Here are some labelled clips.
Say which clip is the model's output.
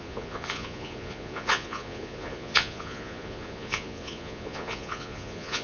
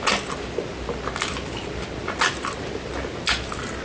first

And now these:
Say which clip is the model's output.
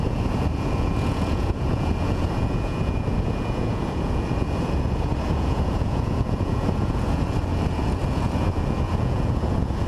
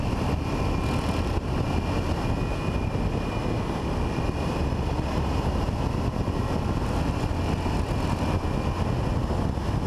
first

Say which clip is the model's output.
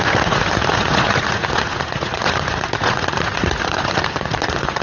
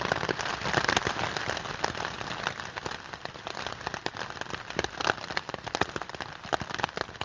first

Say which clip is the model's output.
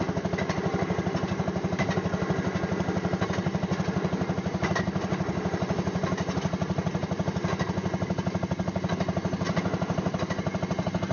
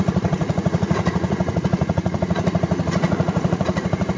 second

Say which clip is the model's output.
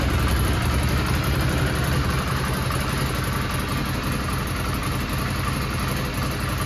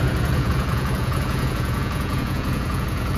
second